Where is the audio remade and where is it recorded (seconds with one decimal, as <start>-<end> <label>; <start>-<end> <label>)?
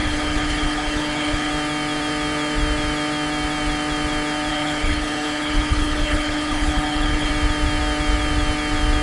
0.0-1.5 remade; 1.5-4.5 recorded; 4.5-7.3 remade; 7.3-9.0 recorded